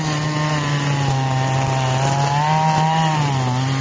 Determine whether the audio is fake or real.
real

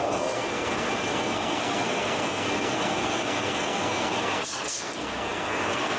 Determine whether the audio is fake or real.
fake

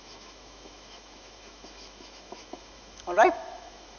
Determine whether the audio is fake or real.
fake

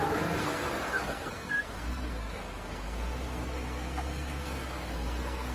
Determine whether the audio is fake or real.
fake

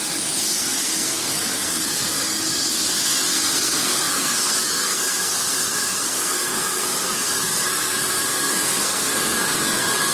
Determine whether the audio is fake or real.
fake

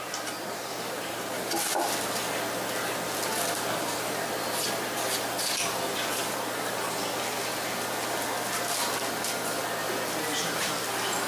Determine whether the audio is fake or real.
real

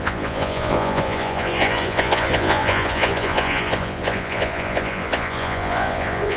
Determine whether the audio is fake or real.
fake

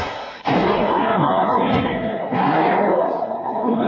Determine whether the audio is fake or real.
fake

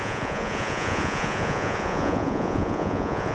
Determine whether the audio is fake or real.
fake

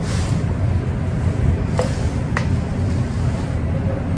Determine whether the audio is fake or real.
real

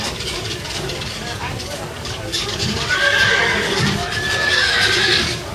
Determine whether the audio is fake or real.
fake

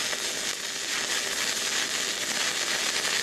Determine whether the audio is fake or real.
real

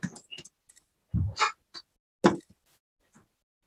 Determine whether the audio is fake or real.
real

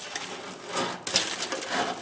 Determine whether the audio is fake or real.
real